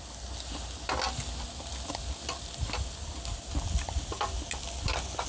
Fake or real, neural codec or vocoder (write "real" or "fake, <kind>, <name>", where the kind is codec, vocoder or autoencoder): real